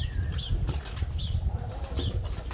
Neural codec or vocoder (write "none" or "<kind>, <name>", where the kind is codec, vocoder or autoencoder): none